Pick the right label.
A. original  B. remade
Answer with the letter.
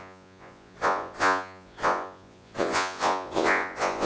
B